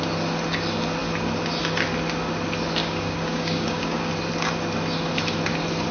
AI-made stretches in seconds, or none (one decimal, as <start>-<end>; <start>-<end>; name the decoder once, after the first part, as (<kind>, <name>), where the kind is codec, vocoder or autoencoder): 2.8-4.1 (codec, DAC)